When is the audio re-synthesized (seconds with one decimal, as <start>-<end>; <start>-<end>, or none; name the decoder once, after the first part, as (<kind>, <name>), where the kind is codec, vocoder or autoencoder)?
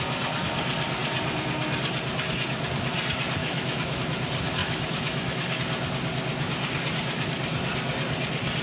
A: 3.4-4.0 (autoencoder, DAC-VAE); 4.6-5.6